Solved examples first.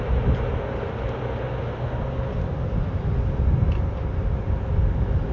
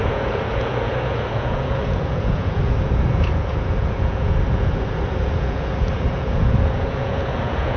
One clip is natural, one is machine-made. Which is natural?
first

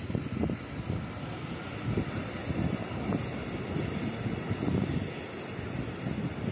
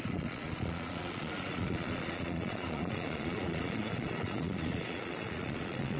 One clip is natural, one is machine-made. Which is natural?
first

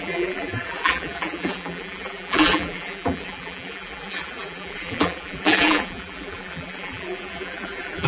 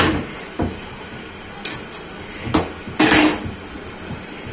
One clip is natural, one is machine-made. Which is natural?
second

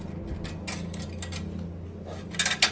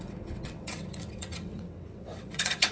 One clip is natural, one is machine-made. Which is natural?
first